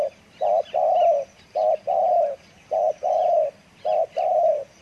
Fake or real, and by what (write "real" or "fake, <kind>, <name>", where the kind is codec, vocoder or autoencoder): real